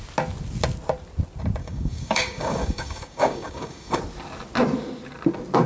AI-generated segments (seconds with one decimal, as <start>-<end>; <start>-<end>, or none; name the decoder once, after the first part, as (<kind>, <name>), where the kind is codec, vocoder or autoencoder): 1.6-4.0 (codec, DAC)